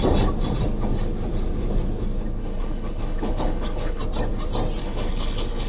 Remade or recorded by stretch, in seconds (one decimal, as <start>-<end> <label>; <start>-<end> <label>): 0.0-2.4 recorded; 2.4-4.0 remade; 4.0-4.8 recorded; 4.8-5.7 remade